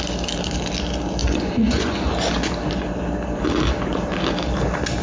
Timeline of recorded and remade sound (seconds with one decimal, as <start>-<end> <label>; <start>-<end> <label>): 0.0-1.2 recorded; 1.2-2.1 remade; 2.1-5.0 recorded